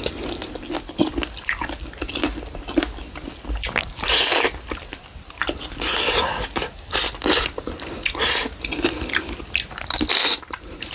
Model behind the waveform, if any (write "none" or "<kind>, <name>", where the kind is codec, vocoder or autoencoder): none